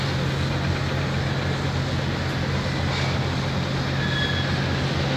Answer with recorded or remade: recorded